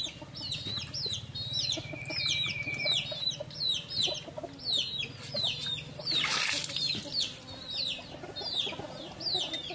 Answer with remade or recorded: recorded